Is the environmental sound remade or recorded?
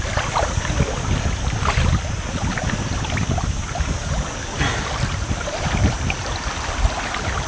recorded